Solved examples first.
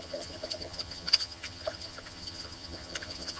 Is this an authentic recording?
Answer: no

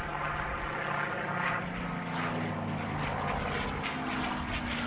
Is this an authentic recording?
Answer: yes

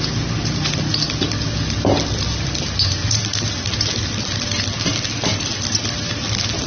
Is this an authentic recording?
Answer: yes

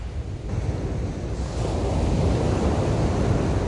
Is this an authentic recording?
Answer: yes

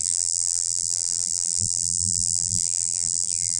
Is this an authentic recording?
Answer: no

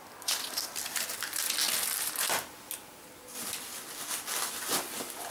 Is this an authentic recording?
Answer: yes